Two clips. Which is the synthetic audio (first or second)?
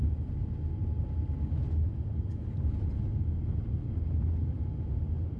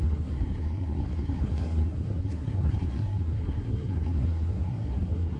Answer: second